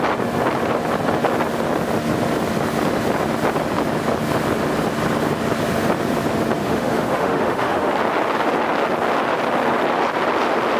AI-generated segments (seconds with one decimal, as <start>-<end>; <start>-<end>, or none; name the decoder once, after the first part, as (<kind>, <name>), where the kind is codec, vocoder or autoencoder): 6.6-7.9 (autoencoder, DAC-VAE)